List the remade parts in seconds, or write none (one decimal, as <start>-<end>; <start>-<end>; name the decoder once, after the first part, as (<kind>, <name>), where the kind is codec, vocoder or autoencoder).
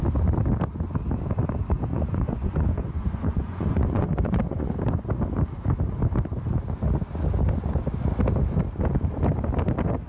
1.9-4.7 (vocoder, Vocos)